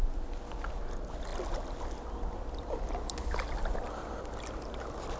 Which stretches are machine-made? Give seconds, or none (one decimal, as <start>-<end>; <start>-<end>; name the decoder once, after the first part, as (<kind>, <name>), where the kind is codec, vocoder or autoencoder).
none